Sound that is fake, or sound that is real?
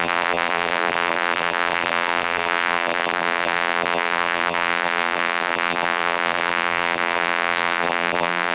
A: fake